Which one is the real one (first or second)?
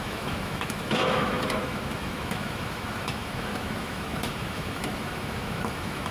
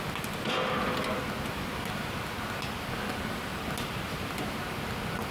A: second